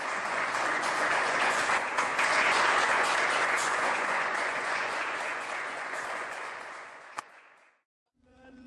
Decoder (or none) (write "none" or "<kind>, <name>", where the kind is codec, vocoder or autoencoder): vocoder, Vocos